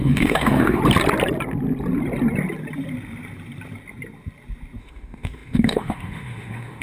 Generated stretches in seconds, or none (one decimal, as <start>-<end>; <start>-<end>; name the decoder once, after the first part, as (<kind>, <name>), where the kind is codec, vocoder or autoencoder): 0.0-0.8 (autoencoder, DAC-VAE); 4.8-6.8